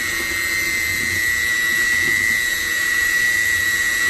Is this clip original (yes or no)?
no